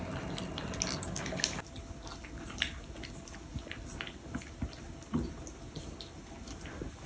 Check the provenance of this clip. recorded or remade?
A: recorded